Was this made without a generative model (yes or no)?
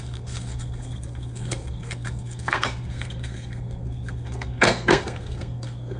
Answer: no